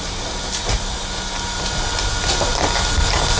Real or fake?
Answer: real